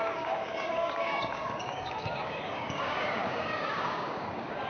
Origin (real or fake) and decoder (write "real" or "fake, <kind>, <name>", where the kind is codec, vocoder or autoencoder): fake, codec, DAC